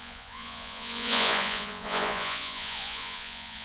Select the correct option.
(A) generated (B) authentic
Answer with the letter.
A